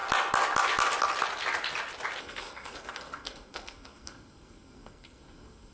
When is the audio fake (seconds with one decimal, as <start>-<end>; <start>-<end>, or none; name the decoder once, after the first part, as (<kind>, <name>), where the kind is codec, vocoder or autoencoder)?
2.2-5.7 (codec, SNAC)

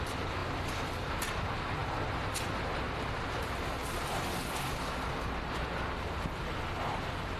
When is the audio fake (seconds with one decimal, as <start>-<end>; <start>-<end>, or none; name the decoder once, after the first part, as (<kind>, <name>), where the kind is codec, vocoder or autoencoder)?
0.4-1.1 (vocoder, BigVGAN v2); 3.8-4.7

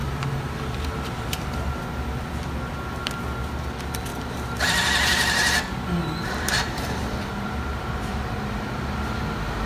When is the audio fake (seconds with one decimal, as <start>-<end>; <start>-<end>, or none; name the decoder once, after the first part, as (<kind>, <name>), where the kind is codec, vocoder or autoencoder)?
0.0-1.8 (vocoder, BigVGAN v2); 4.1-9.2

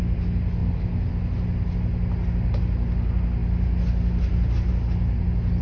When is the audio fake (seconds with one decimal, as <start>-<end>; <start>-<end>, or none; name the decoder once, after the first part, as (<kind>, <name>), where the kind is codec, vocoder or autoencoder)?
none

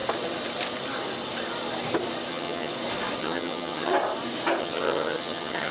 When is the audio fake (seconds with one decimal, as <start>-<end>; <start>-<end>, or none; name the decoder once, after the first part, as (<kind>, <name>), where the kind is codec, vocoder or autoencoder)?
2.3-2.7 (vocoder, HiFi-GAN); 3.2-3.9; 4.6-5.7

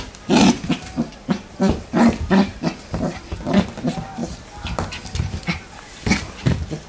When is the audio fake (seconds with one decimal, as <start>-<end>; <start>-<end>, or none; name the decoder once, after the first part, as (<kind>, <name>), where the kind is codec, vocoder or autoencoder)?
0.0-4.2 (vocoder, BigVGAN v2); 6.2-6.9

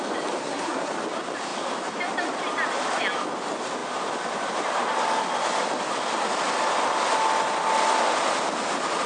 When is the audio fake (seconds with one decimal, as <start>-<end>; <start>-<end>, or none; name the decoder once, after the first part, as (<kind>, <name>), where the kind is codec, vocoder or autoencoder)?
0.4-0.9 (codec, SNAC)

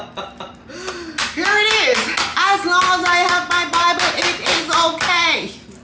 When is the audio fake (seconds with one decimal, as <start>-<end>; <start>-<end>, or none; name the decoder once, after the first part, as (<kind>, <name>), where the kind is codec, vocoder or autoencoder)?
none